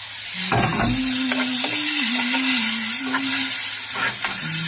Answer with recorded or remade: recorded